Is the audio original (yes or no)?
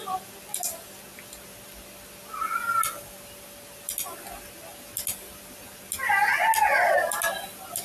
yes